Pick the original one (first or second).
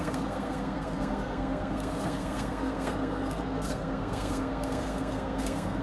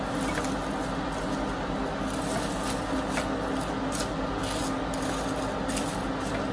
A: second